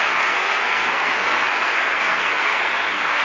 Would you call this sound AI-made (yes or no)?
yes